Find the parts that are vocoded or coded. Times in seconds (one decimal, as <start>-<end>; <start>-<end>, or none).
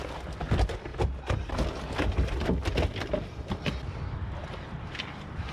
none